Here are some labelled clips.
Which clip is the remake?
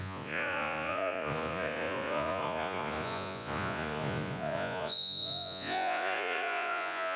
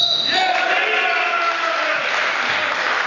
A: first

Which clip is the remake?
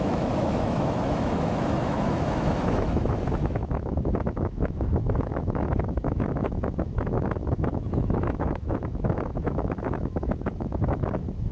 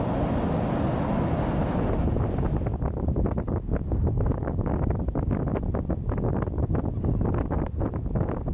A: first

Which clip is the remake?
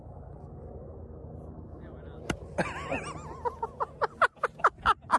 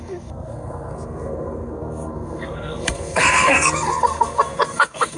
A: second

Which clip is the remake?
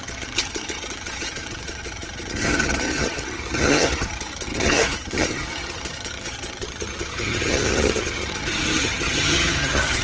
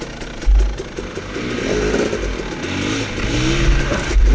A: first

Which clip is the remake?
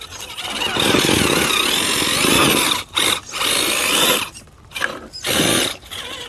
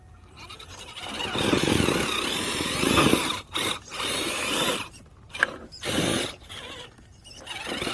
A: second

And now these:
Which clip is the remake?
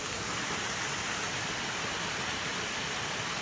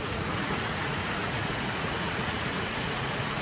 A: second